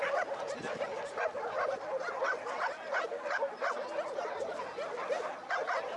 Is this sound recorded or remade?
recorded